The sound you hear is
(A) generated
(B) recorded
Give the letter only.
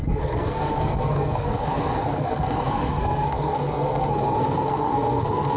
A